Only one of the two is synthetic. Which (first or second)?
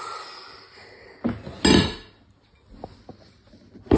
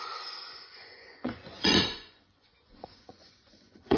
second